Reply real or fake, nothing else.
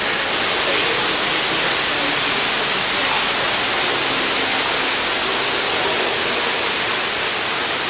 real